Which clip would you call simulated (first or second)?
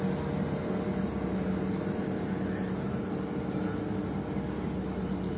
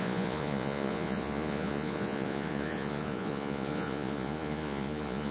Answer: second